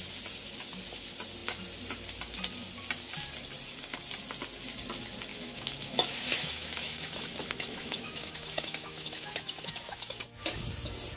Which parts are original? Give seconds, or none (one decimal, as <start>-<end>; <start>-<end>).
0.0-5.3; 10.6-11.2